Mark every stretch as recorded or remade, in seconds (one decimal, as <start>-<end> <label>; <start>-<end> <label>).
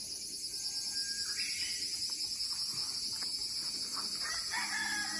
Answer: 0.0-5.2 recorded